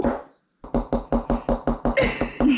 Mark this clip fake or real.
real